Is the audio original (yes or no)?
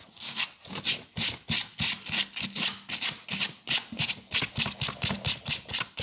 yes